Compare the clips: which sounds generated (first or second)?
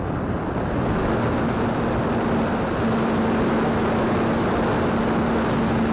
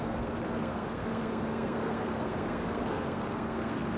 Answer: second